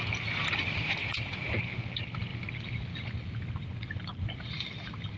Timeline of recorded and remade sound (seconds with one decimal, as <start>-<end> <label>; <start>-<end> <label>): 0.0-1.0 recorded; 1.0-1.6 remade; 1.6-5.2 recorded